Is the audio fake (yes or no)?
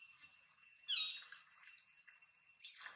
no